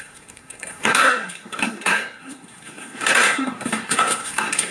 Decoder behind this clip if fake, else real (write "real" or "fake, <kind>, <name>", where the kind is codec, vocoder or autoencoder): fake, codec, SNAC